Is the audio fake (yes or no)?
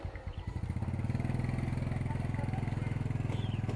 no